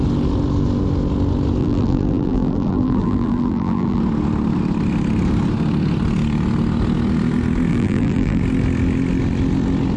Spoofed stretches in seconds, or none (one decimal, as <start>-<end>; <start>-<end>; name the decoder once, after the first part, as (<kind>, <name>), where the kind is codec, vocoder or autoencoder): 1.6-4.0 (vocoder, BigVGAN v2); 7.7-8.4